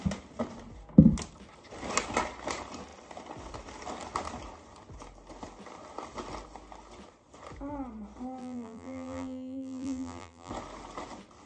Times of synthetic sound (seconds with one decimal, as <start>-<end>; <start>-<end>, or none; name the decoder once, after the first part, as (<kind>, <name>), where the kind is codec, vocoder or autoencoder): 8.4-10.5 (vocoder, BigVGAN v2)